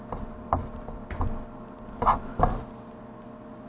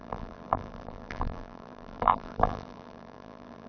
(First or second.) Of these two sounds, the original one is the first